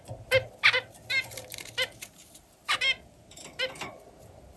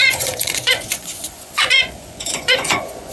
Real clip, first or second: first